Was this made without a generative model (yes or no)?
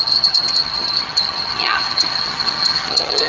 no